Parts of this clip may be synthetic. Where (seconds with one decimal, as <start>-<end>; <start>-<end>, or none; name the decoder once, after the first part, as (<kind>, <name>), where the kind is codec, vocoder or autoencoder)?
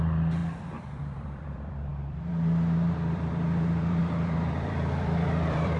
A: 0.0-5.8 (vocoder, BigVGAN v2)